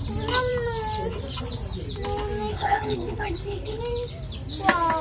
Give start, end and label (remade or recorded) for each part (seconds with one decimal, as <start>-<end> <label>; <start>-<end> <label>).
0.0-2.5 recorded; 2.5-3.8 remade; 3.8-5.0 recorded